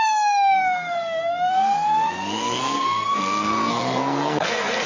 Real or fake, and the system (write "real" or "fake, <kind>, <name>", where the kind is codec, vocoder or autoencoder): fake, codec, SNAC